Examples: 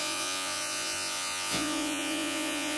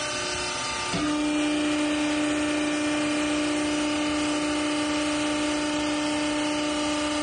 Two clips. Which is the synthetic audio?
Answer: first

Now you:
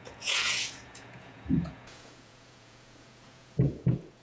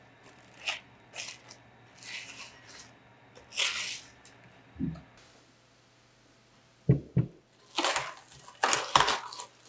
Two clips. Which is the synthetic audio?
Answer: first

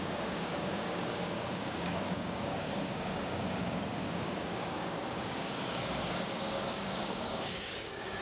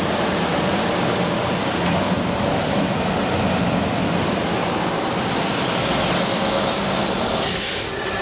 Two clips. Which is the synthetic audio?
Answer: first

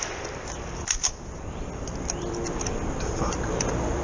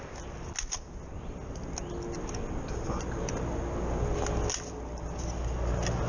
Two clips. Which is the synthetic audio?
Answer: first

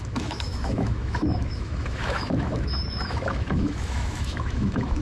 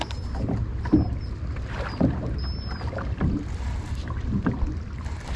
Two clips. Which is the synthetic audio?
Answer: first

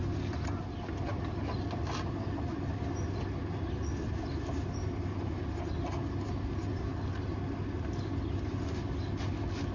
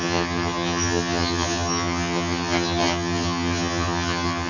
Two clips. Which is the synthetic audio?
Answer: second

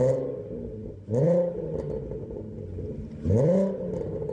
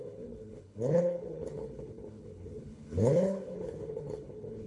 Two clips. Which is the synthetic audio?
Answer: second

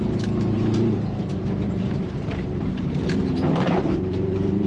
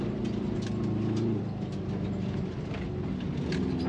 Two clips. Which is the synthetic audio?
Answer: first